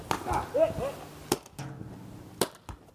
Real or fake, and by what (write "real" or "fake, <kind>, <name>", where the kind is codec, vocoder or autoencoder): real